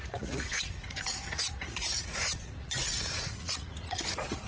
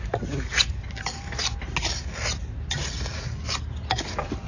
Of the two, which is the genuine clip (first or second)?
second